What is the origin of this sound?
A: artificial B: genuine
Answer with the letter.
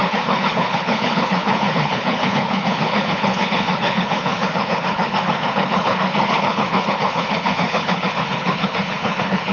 A